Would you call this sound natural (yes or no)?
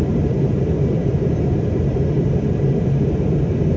yes